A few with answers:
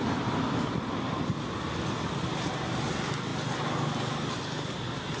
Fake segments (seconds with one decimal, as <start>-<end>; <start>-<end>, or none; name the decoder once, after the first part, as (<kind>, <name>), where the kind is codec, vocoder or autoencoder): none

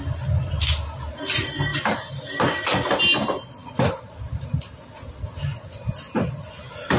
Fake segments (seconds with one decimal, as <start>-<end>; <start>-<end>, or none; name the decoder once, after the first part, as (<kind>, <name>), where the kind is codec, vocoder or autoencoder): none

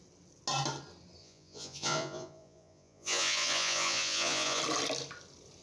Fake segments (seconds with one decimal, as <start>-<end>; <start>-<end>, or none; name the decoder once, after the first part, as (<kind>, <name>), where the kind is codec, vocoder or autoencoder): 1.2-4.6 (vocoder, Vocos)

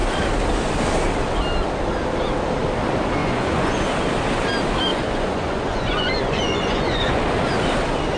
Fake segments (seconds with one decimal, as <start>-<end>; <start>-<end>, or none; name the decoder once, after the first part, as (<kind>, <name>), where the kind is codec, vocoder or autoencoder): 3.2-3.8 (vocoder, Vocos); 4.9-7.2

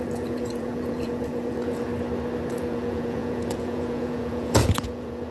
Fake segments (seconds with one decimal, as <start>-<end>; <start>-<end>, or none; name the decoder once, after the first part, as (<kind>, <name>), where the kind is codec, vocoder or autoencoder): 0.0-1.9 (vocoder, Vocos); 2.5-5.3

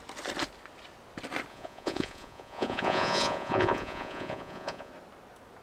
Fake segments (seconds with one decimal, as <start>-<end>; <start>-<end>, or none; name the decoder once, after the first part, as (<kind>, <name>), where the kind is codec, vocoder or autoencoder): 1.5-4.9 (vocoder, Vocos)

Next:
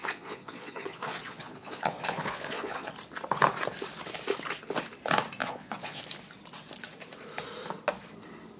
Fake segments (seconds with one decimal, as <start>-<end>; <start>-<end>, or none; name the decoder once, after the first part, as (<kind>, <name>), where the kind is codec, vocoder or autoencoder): 0.0-2.9 (vocoder, Vocos); 5.4-6.0

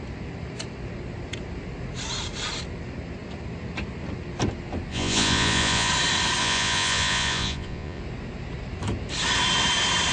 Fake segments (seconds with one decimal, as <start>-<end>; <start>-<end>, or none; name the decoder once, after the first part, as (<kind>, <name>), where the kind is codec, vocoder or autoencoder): 4.9-5.9 (vocoder, Vocos); 6.4-8.0